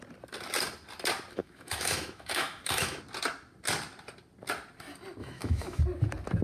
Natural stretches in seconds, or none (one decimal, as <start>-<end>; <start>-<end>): 0.0-1.4; 3.0-5.2; 5.8-6.4